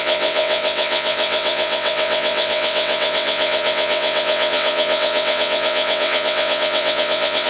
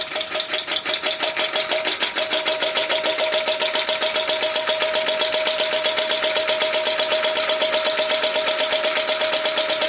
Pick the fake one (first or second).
first